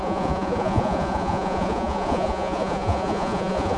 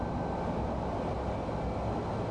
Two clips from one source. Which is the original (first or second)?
second